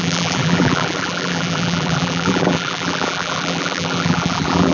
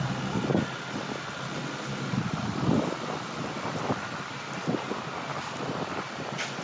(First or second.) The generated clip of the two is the first